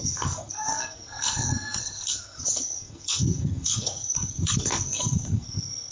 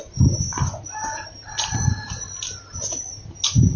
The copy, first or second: first